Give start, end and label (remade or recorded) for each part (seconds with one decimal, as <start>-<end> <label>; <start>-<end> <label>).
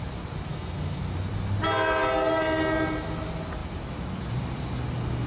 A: 0.0-0.5 recorded; 0.5-1.0 remade; 1.0-5.3 recorded